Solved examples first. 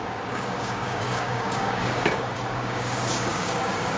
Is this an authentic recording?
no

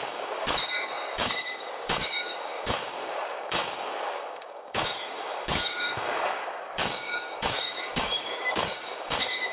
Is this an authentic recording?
no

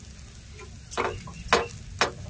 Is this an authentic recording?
yes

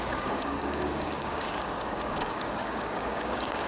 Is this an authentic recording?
no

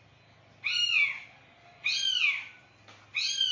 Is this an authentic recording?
yes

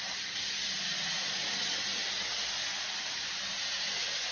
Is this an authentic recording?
yes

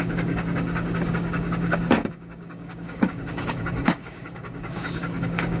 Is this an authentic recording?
no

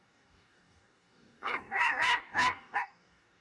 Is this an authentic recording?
no